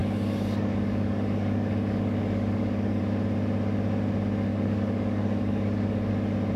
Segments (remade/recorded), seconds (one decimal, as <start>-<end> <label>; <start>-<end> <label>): 0.0-3.0 remade; 3.0-4.5 recorded; 4.5-6.1 remade; 6.1-6.6 recorded

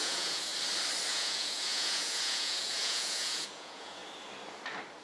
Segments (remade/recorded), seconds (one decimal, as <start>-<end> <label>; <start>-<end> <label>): 0.0-0.5 remade; 0.5-1.1 recorded; 1.1-4.0 remade; 4.0-5.0 recorded